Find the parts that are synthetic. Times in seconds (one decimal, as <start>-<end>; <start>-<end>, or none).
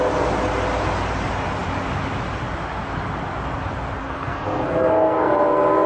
4.0-5.9